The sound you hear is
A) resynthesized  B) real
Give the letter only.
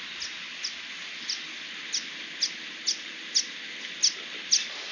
B